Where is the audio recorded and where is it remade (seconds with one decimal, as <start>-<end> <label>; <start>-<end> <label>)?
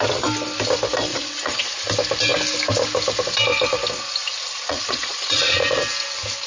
0.0-1.1 recorded; 1.1-1.7 remade; 1.7-4.4 recorded; 4.4-5.8 remade; 5.8-6.5 recorded